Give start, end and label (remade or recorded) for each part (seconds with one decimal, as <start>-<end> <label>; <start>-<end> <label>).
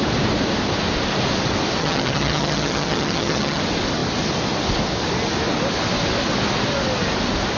0.0-1.8 recorded; 1.8-3.6 remade; 3.6-7.6 recorded